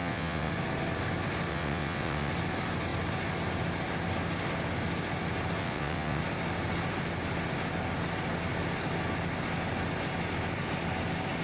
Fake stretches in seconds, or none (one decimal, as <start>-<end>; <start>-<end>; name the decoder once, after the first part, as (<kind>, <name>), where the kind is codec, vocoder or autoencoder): 0.0-0.5 (vocoder, WaveNeXt); 1.5-2.3; 5.6-6.2